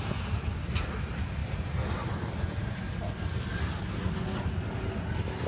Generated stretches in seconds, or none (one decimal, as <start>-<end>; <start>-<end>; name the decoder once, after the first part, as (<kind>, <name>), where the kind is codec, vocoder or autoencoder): none